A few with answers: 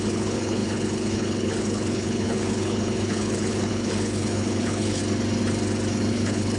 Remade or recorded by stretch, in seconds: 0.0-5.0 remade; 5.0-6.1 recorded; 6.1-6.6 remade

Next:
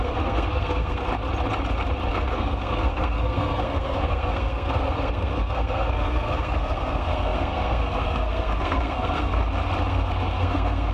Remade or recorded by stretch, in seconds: 0.0-1.0 remade; 1.0-2.1 recorded; 2.1-9.4 remade; 9.4-9.9 recorded; 9.9-10.9 remade